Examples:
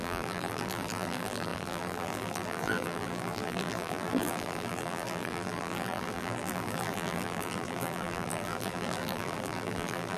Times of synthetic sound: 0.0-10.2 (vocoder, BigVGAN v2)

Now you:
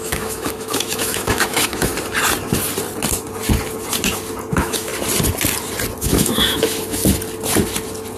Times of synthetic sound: 0.0-1.9 (autoencoder, DAC-VAE); 4.5-4.9; 6.0-7.0

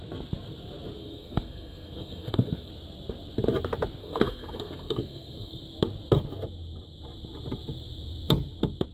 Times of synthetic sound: 1.0-2.7 (codec, SNAC); 4.0-5.6

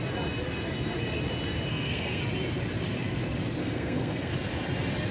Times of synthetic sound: 1.7-2.2 (codec, SNAC); 3.6-4.3

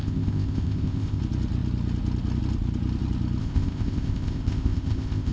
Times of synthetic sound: 0.0-1.2 (codec, ZipCodec); 3.4-5.3

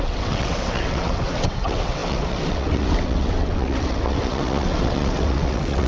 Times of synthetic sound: 0.0-5.9 (vocoder, WaveNeXt)